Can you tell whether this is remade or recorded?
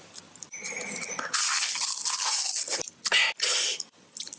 recorded